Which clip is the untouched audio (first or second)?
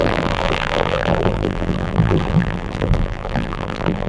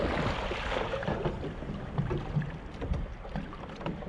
second